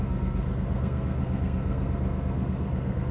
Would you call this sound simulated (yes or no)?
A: yes